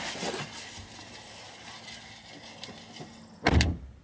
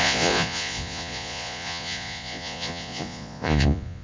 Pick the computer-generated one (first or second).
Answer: second